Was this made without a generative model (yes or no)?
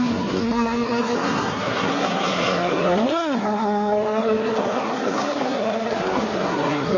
no